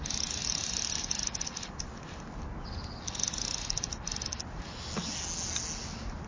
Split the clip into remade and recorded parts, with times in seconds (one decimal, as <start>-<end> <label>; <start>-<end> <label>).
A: 0.0-6.3 recorded